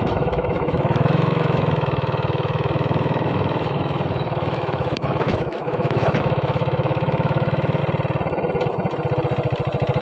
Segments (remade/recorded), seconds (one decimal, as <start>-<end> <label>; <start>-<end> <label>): 0.0-7.8 remade; 7.8-10.0 recorded